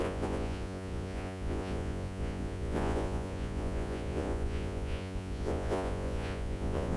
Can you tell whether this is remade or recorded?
remade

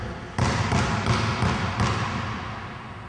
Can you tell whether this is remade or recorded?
recorded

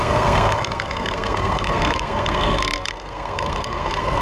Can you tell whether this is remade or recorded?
remade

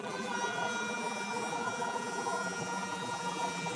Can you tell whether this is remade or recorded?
remade